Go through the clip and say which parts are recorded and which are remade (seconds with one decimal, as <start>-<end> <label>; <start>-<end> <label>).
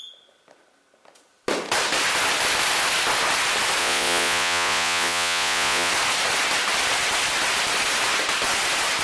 0.0-3.8 recorded; 3.8-5.9 remade; 5.9-9.0 recorded